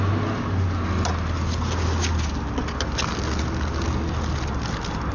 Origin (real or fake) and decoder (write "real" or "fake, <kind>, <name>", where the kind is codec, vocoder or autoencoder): real